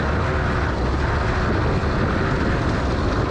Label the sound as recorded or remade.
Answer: recorded